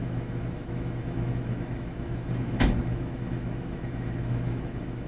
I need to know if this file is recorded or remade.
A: remade